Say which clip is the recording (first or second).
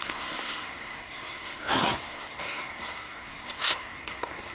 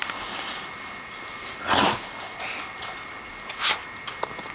second